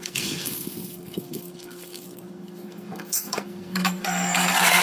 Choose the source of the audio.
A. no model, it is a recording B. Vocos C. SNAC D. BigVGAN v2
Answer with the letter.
C